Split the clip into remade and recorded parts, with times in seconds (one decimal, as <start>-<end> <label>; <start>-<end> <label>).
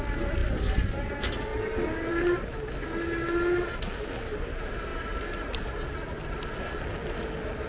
0.0-7.7 recorded